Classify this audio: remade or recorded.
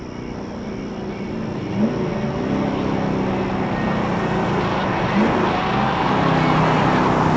recorded